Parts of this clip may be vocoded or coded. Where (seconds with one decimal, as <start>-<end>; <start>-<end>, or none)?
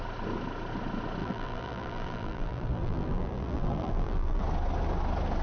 1.2-4.4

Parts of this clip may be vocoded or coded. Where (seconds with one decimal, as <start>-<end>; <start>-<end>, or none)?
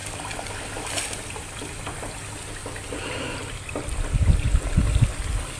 2.6-3.8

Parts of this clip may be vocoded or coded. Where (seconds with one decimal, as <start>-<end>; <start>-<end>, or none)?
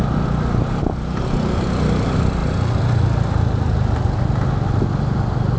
1.2-2.4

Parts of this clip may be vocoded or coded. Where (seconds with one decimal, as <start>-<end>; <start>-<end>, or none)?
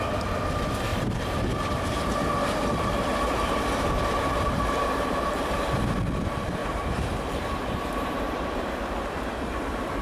0.9-5.9; 6.6-8.8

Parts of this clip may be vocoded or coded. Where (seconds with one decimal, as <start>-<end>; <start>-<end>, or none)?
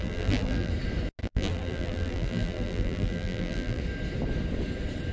0.0-0.7; 1.2-3.8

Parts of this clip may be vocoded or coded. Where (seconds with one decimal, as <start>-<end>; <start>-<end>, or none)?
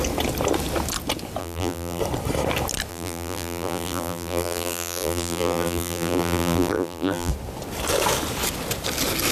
1.4-2.0; 2.9-7.3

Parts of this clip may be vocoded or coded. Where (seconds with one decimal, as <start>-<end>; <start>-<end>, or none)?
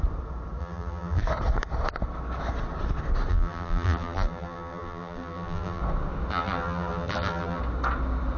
0.6-1.2; 3.3-5.8; 6.3-7.6